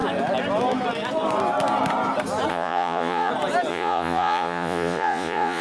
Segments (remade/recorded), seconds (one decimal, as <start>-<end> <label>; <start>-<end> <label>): 0.0-2.5 recorded; 2.5-3.3 remade; 3.3-3.7 recorded; 3.7-5.6 remade